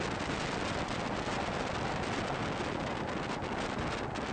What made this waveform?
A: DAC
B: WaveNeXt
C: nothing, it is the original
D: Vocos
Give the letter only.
C